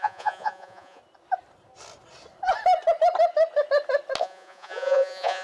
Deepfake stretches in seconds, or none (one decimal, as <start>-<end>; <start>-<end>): 0.0-1.0; 4.2-5.4